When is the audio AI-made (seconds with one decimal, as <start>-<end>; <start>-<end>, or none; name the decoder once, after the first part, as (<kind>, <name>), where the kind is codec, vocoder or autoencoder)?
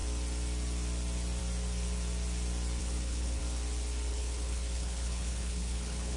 2.8-3.4 (codec, HILCodec); 4.1-6.2